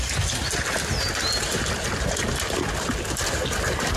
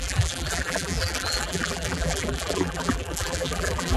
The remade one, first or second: second